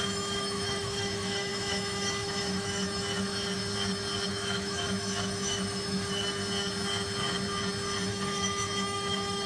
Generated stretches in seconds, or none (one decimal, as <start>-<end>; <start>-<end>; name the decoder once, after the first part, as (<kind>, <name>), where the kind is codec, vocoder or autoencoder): 0.0-3.6 (autoencoder, DAC-VAE); 4.3-6.4; 8.1-9.5